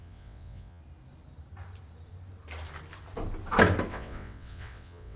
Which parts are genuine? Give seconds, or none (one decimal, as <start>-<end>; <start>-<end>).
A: 0.8-3.9